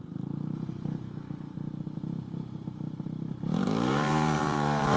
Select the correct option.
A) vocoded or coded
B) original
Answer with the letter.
A